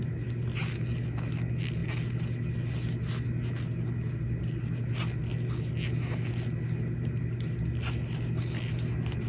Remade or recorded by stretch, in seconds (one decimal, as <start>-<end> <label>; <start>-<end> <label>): 0.0-9.3 recorded